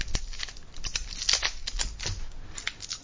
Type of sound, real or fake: real